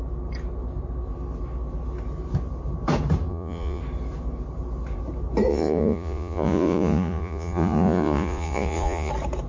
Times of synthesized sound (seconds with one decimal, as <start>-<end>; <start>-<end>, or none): 3.3-3.8; 5.5-9.1

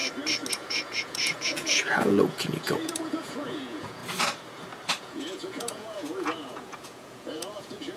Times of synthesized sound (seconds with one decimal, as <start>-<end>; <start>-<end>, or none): 0.5-4.0; 5.0-8.0

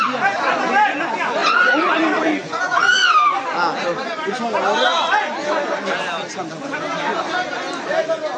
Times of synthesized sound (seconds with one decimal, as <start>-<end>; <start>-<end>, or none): 1.4-2.8